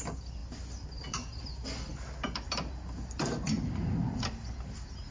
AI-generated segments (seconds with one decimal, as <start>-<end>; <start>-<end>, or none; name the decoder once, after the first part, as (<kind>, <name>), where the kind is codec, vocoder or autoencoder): none